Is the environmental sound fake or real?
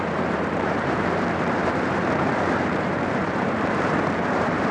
fake